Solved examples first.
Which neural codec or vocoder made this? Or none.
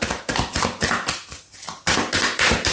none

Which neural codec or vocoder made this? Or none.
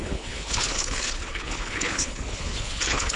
codec, HILCodec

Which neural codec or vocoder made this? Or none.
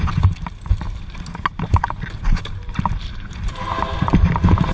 none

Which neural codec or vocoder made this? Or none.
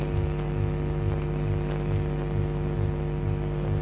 vocoder, BigVGAN v2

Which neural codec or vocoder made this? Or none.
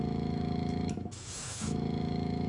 autoencoder, DAC-VAE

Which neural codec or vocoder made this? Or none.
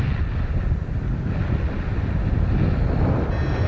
none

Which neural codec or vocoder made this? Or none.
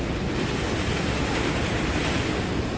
none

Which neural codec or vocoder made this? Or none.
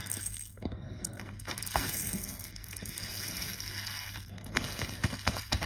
codec, SNAC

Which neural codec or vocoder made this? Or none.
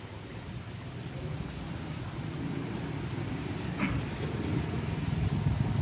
none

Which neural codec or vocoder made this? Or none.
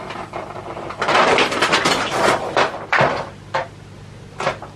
none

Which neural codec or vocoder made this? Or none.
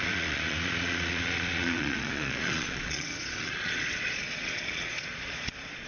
vocoder, Vocos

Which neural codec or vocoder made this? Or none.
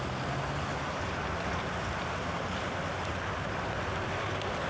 none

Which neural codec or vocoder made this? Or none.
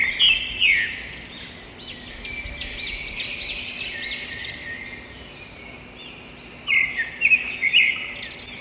none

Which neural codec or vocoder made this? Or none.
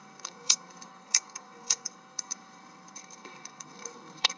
codec, SNAC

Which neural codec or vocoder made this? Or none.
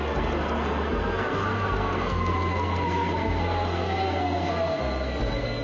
codec, SNAC